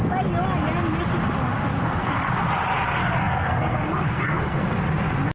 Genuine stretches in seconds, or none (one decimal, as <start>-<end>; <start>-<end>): 0.0-1.7; 2.3-3.0; 4.7-5.3